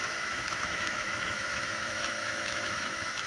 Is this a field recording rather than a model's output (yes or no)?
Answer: no